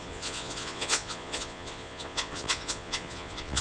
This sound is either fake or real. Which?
fake